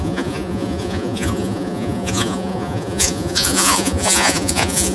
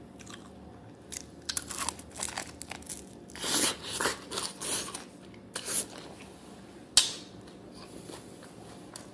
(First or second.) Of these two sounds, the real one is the second